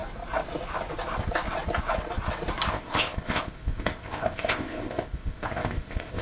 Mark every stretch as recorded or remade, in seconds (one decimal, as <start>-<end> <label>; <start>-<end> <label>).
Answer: 0.0-2.7 recorded; 2.7-6.2 remade